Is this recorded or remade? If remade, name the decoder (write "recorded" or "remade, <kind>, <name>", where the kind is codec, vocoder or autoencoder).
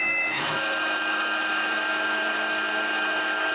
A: remade, autoencoder, DAC-VAE